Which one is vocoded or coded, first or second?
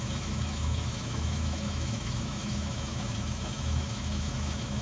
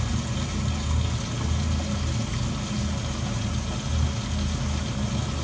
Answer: first